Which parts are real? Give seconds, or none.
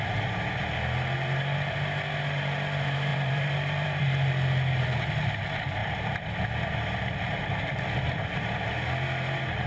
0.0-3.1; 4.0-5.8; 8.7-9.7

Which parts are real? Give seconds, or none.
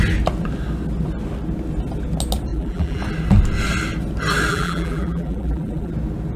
0.0-2.5; 3.0-4.5; 5.9-6.4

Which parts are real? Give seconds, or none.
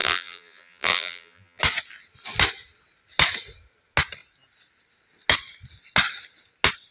1.6-6.9